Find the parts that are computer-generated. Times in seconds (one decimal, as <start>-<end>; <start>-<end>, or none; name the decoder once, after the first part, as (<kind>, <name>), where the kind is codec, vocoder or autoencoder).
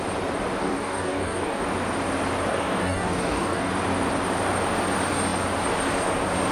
0.6-1.6 (codec, DAC); 2.5-3.7